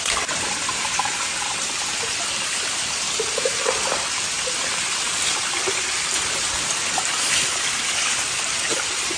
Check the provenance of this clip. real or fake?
fake